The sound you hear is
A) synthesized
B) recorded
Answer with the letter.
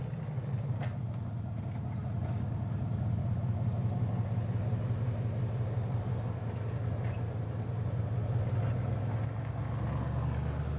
B